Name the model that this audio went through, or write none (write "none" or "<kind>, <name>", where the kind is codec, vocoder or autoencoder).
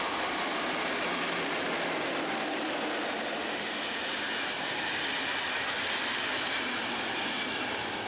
none